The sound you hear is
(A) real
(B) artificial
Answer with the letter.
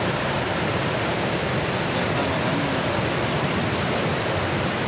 B